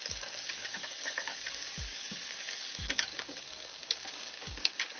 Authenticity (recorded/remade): remade